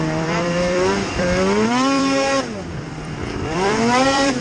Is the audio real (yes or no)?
no